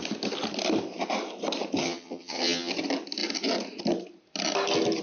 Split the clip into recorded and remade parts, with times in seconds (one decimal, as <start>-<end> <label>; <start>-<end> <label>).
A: 0.0-1.8 recorded; 1.8-2.7 remade; 2.7-5.0 recorded